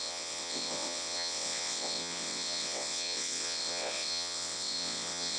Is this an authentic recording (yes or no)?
no